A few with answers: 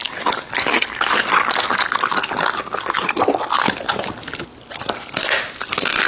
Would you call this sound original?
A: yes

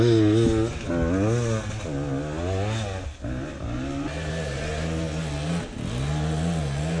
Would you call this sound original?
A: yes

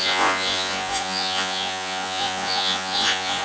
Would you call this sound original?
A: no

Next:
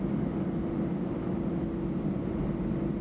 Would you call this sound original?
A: yes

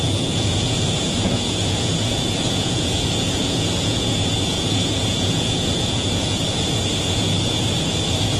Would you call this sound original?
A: no